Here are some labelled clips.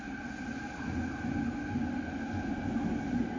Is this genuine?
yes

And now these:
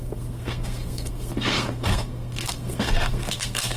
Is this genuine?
no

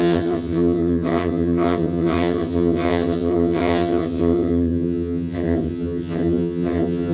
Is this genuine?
no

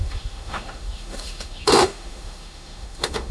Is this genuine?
no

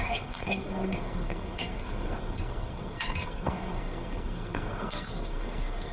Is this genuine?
no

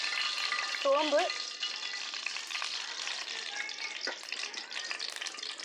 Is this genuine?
yes